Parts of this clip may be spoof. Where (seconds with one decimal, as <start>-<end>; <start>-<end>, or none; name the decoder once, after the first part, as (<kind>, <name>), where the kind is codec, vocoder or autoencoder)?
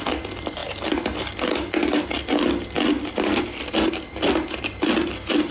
none